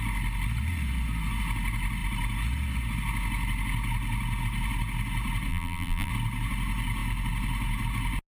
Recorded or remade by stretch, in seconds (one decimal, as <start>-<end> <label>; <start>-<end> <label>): 0.0-5.5 recorded; 5.5-6.1 remade; 6.1-8.3 recorded